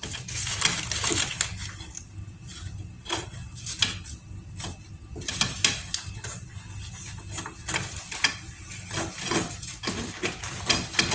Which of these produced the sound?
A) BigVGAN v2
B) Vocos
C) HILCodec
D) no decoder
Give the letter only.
D